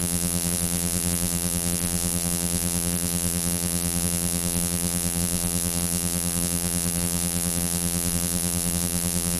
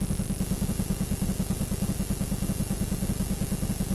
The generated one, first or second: first